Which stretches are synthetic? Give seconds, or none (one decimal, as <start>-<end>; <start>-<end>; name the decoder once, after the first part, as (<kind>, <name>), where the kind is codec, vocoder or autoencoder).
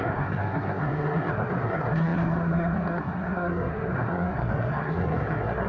0.0-5.7 (codec, SNAC)